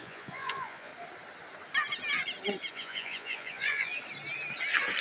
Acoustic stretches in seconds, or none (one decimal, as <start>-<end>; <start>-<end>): 0.9-2.7; 3.9-5.0